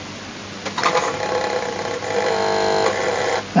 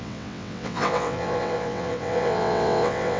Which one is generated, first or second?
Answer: second